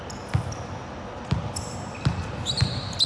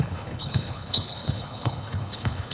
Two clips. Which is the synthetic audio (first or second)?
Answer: second